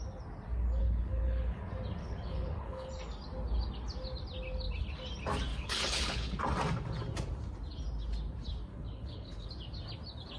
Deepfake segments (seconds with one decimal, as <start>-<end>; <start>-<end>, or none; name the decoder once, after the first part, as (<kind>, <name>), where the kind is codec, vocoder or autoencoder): 0.8-1.6 (codec, HILCodec); 2.0-2.9; 5.5-6.4; 8.7-9.5